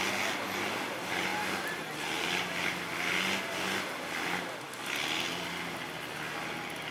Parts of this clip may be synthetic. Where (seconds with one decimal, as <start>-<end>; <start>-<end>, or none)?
none